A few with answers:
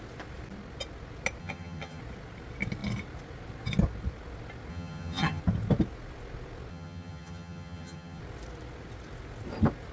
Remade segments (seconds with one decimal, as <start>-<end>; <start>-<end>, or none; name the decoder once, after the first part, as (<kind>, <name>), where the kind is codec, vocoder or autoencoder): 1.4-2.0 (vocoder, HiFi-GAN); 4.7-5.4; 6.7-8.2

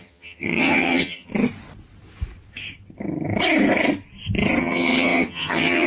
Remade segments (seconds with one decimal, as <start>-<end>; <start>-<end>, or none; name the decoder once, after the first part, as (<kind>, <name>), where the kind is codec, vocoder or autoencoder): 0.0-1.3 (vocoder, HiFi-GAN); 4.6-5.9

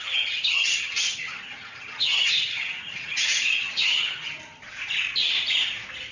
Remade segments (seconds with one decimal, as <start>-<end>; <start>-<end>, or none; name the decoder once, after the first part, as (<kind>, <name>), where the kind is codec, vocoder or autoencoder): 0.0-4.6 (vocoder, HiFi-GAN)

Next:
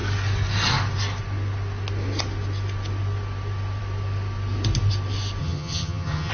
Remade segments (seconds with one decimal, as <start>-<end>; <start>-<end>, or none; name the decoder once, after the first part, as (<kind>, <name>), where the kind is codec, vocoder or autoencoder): 5.4-6.3 (vocoder, HiFi-GAN)

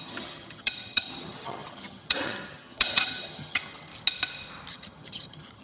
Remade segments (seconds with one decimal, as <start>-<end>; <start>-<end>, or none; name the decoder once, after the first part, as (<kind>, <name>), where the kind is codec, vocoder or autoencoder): 0.0-3.9 (vocoder, HiFi-GAN); 4.7-5.6

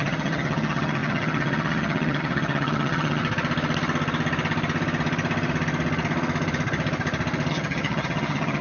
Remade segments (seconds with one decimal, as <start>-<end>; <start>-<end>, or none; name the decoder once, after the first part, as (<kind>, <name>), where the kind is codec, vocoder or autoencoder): 0.0-3.2 (vocoder, HiFi-GAN); 7.5-8.6